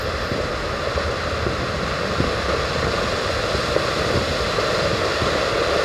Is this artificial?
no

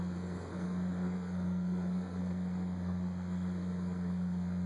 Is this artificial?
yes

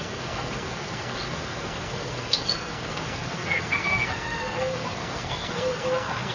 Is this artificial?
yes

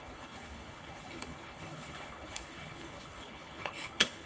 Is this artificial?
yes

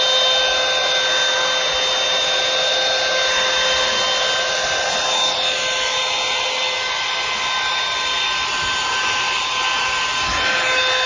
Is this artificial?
no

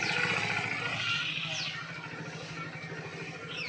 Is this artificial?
no